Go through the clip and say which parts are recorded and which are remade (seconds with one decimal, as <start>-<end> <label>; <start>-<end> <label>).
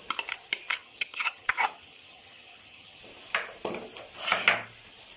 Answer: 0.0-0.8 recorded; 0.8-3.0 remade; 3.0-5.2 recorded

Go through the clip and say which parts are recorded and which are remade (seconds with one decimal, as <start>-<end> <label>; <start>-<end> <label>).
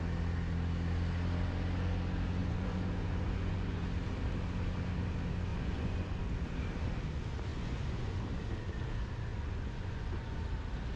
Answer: 0.0-2.4 recorded; 2.4-3.8 remade; 3.8-5.5 recorded; 5.5-6.2 remade; 6.2-7.5 recorded; 7.5-8.2 remade; 8.2-9.3 recorded; 9.3-10.4 remade; 10.4-11.0 recorded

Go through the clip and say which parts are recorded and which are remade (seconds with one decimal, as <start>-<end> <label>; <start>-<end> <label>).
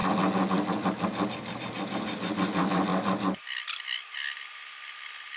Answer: 0.0-5.4 recorded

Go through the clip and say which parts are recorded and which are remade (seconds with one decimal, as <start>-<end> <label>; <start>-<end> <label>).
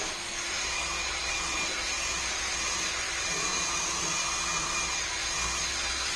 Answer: 0.0-6.2 recorded